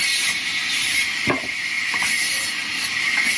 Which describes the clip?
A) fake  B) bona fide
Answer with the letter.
B